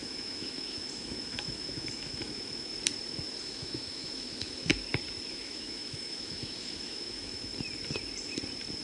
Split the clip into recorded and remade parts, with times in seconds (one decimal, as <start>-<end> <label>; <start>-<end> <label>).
0.0-2.7 remade; 2.7-3.4 recorded; 3.4-4.7 remade; 4.7-5.3 recorded; 5.3-7.5 remade; 7.5-8.8 recorded